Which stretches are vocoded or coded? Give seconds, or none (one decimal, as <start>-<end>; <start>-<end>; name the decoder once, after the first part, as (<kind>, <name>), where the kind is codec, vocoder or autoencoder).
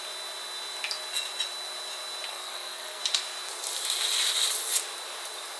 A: 2.3-3.0 (codec, SNAC)